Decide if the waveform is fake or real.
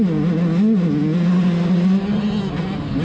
real